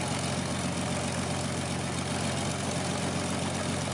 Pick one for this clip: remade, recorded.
recorded